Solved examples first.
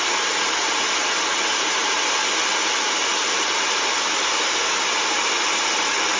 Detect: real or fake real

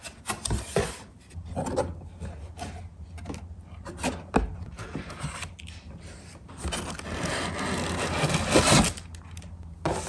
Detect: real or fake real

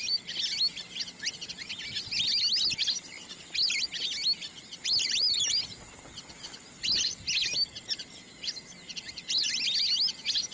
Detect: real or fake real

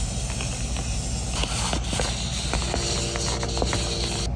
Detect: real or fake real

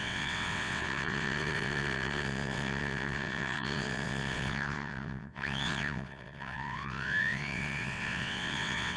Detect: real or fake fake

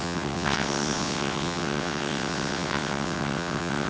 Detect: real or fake fake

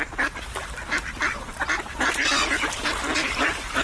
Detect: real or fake real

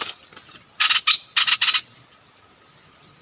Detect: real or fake real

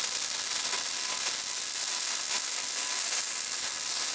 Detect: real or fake real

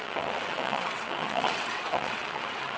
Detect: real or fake fake